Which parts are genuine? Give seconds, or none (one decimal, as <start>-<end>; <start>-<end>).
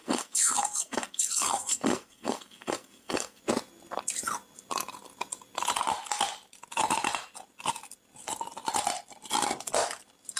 3.4-10.4